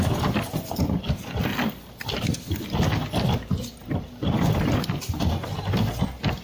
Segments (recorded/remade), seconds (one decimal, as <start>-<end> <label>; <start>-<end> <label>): 0.0-6.4 recorded